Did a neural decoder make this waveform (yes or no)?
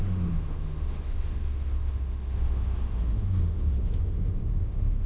yes